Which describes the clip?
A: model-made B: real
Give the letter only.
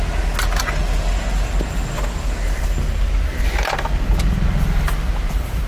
B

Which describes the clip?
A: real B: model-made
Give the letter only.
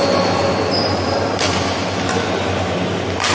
A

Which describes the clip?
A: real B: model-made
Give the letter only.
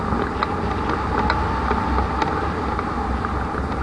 A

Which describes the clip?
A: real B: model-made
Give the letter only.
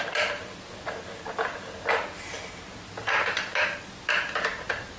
A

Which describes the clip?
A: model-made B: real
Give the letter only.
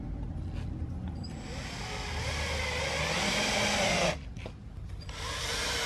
B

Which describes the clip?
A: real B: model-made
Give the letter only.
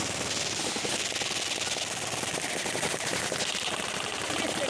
A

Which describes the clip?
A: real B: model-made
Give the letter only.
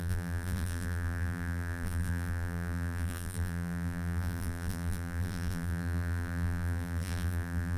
B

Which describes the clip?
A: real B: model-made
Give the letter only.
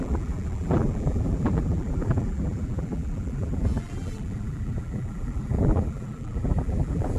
B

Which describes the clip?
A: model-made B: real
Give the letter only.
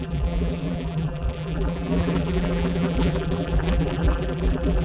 A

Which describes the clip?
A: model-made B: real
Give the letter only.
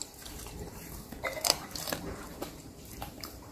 A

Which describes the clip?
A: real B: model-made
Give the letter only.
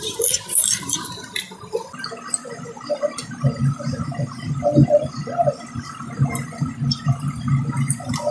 A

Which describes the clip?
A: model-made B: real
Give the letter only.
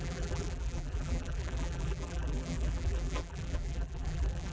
A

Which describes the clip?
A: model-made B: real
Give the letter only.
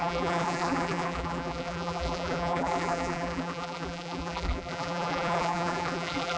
A